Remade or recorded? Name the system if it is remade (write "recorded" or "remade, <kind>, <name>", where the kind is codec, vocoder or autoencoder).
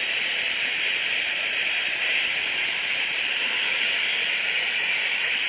remade, vocoder, BigVGAN v2